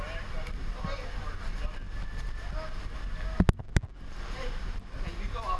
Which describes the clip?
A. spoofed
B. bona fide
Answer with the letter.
B